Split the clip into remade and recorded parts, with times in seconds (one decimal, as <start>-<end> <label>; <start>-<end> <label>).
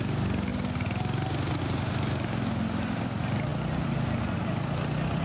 0.0-5.2 recorded